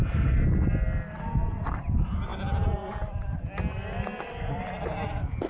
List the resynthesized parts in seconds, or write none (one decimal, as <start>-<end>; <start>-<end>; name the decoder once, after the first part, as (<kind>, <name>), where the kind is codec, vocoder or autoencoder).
none